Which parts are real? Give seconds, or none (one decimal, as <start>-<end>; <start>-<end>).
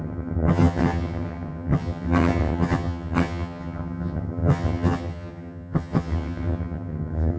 none